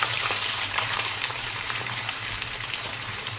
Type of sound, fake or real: fake